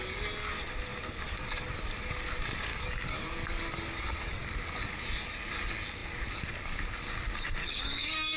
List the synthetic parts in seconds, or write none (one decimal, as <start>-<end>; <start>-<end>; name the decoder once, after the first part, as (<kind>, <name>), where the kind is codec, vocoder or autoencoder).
0.9-1.5 (codec, DAC); 2.7-4.4; 7.6-8.4